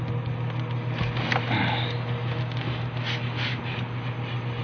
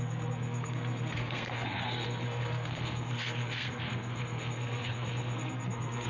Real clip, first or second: first